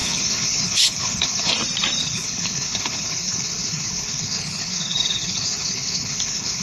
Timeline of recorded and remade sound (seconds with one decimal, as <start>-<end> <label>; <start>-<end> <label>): 0.0-1.5 remade; 1.5-2.0 recorded; 2.0-6.6 remade